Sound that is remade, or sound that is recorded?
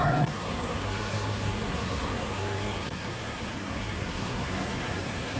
remade